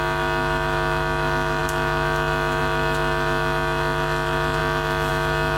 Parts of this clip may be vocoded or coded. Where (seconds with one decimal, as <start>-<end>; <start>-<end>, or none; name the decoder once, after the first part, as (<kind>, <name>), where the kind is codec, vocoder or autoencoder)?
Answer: 0.0-5.6 (autoencoder, DAC-VAE)